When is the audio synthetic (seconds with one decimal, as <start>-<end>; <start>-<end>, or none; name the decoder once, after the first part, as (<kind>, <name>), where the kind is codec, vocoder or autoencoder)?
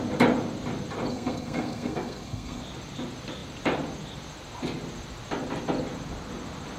1.1-2.6 (codec, SNAC)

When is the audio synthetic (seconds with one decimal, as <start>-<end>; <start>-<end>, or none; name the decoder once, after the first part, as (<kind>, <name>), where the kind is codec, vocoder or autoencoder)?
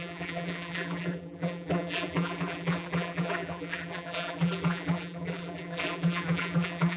0.0-7.0 (vocoder, BigVGAN v2)